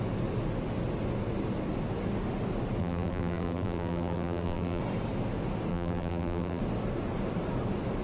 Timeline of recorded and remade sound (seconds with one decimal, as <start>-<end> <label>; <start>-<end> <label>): 0.0-2.8 recorded; 2.8-4.8 remade; 4.8-5.7 recorded; 5.7-6.6 remade; 6.6-8.0 recorded